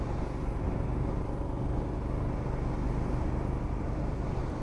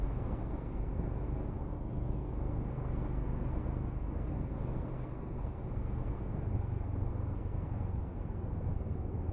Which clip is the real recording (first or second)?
first